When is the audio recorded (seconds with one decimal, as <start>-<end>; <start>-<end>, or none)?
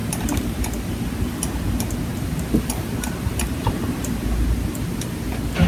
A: 0.6-2.1; 4.4-5.7